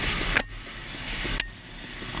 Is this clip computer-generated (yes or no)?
no